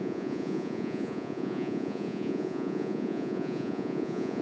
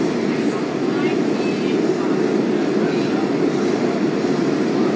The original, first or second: second